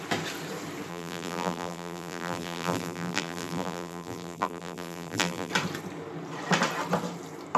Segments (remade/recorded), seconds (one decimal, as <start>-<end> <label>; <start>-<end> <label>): 0.0-0.9 recorded; 0.9-5.5 remade; 5.5-7.6 recorded